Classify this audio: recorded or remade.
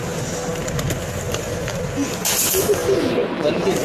recorded